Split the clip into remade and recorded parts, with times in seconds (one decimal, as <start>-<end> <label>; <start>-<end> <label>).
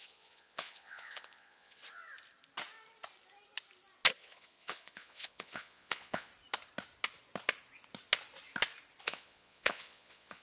0.0-1.8 remade; 1.8-4.2 recorded; 4.2-6.3 remade; 6.3-9.0 recorded; 9.0-10.4 remade